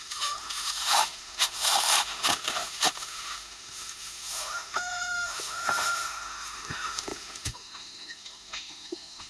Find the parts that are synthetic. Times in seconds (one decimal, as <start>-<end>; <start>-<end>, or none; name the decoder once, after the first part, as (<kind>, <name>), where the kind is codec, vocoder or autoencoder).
0.0-9.3 (autoencoder, DAC-VAE)

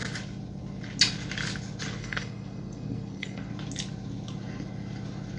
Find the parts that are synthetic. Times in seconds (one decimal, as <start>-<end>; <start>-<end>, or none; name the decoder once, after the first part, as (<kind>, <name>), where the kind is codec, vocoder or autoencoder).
2.0-3.5 (codec, SNAC)

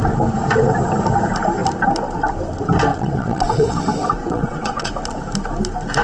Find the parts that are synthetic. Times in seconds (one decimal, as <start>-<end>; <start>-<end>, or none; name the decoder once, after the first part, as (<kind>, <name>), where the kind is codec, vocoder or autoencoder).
2.9-3.8 (vocoder, WaveNeXt); 4.2-4.9

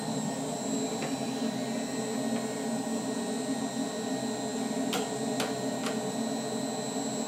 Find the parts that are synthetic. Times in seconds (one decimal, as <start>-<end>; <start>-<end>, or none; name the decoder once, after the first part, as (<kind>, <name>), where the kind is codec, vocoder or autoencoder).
none

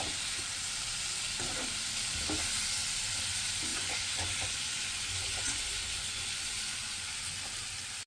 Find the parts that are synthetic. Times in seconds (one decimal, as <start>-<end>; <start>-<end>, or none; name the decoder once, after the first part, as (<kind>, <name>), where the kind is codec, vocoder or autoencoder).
3.7-7.2 (vocoder, Vocos)

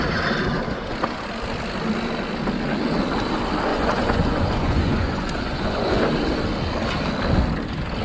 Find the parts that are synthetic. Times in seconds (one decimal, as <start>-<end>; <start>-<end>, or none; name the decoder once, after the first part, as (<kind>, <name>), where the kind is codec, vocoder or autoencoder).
3.7-6.0 (vocoder, Vocos)

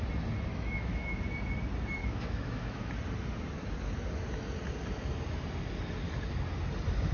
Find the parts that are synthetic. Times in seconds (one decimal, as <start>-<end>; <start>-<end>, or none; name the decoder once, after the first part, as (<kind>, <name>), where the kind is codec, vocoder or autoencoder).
0.5-1.2 (autoencoder, DAC-VAE); 2.0-2.9

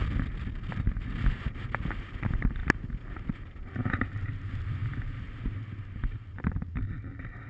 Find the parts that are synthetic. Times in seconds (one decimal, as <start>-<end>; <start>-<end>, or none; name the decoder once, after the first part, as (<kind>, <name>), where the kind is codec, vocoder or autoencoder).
none